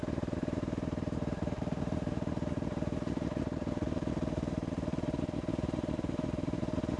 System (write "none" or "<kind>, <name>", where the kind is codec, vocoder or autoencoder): vocoder, BigVGAN v2